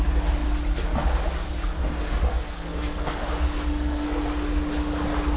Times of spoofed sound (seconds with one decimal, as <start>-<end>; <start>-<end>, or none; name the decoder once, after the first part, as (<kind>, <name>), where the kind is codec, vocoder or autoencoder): 2.3-3.3 (codec, SNAC); 3.7-4.2